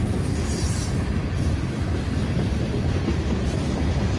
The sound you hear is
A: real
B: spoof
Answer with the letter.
A